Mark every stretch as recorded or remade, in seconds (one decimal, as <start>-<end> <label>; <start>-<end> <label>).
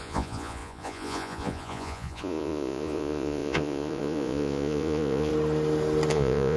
0.0-5.3 remade; 5.3-6.1 recorded; 6.1-6.6 remade